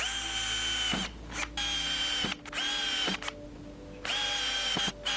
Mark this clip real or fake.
real